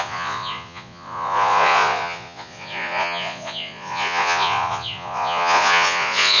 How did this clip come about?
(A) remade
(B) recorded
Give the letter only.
A